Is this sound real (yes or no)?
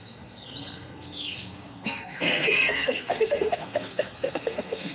no